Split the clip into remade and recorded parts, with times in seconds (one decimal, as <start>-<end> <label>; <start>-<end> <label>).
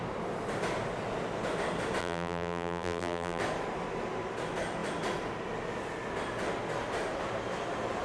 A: 0.0-2.0 recorded; 2.0-3.4 remade; 3.4-8.0 recorded